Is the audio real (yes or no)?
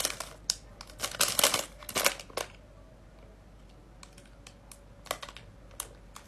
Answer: yes